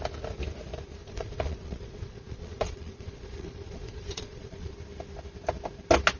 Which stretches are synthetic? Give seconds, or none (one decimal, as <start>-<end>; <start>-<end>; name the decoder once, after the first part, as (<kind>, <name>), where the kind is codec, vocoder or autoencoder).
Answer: 1.0-4.7 (vocoder, Vocos)